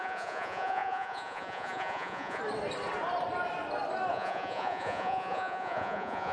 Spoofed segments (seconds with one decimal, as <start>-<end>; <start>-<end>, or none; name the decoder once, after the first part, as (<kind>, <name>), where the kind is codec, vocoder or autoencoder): 0.0-2.4 (vocoder, Vocos); 4.1-6.3